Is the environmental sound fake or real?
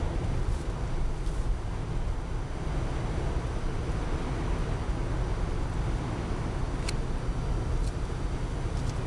real